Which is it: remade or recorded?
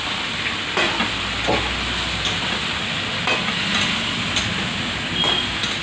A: recorded